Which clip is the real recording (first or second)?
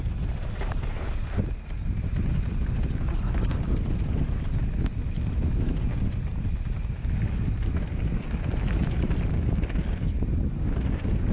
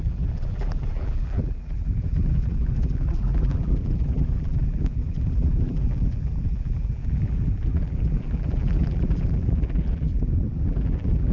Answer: first